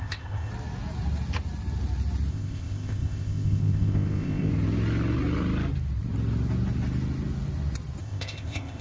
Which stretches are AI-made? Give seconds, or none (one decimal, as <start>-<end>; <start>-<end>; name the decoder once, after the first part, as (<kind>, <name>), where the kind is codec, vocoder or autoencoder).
0.0-0.5 (codec, ZipCodec); 2.3-4.5; 8.0-8.8